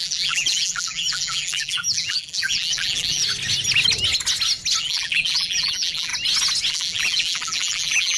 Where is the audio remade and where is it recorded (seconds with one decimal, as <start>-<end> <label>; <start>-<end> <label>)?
0.0-3.2 remade; 3.2-4.8 recorded; 4.8-6.1 remade; 6.1-6.7 recorded; 6.7-8.2 remade